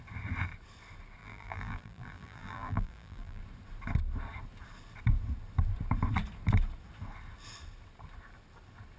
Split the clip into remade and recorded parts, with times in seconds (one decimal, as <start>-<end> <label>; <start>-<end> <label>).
0.0-1.2 recorded; 1.2-3.4 remade; 3.4-9.0 recorded